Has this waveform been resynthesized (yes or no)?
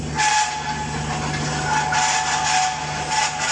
no